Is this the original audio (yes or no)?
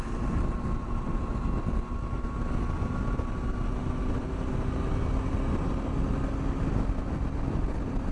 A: yes